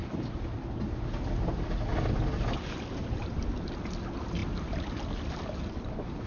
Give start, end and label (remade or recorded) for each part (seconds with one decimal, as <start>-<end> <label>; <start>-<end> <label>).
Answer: 0.0-6.3 recorded